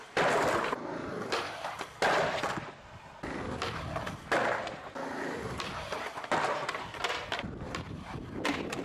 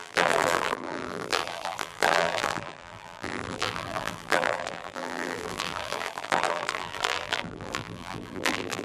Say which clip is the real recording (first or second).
first